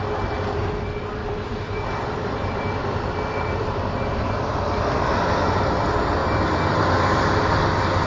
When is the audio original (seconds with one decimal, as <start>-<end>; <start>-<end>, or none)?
0.0-1.2; 5.2-8.1